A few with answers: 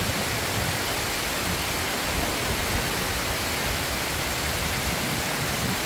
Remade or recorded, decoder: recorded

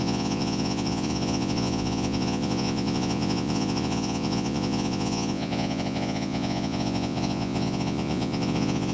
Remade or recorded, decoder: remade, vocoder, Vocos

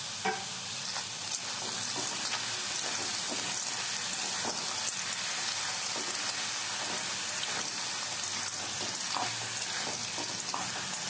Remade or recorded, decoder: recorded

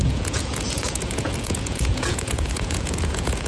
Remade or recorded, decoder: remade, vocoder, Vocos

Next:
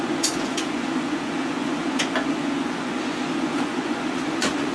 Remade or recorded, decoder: remade, vocoder, Vocos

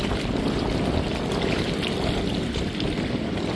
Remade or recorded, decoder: recorded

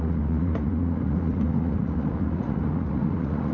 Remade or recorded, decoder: remade, vocoder, Vocos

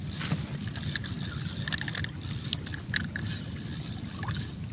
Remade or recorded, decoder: recorded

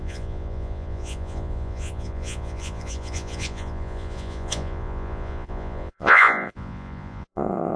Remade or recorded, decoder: remade, vocoder, Vocos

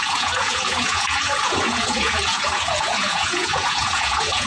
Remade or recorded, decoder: remade, vocoder, Vocos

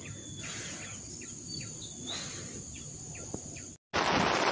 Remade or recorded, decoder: recorded